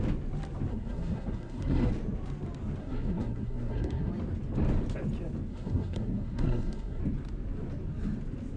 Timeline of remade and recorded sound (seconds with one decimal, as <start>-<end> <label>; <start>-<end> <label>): 0.0-0.7 recorded; 0.7-1.9 remade; 1.9-2.8 recorded; 2.8-4.1 remade; 4.1-5.5 recorded; 5.5-7.0 remade; 7.0-8.6 recorded